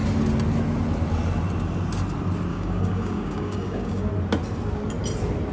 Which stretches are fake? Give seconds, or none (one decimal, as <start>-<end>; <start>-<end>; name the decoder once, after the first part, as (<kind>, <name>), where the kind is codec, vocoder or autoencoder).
2.5-4.1 (codec, DAC)